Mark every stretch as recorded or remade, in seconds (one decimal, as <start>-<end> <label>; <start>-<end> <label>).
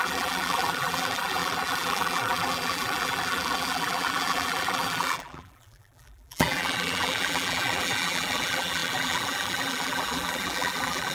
0.0-11.1 remade